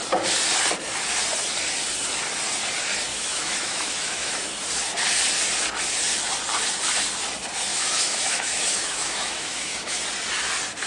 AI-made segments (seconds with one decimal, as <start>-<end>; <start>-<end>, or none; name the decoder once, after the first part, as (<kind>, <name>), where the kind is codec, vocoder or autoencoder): 3.1-4.3 (autoencoder, DAC-VAE); 7.7-10.0